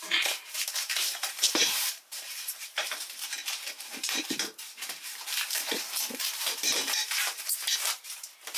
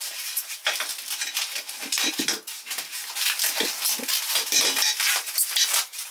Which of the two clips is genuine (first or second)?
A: second